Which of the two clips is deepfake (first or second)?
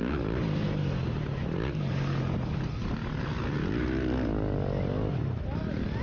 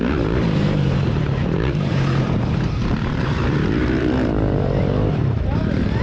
second